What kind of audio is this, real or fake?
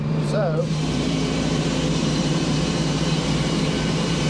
fake